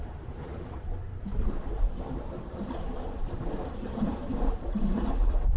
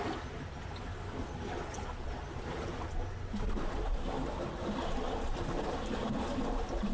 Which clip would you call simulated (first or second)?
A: first